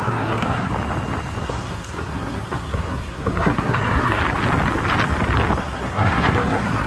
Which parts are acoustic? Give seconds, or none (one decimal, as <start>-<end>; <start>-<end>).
0.7-1.4; 4.2-5.6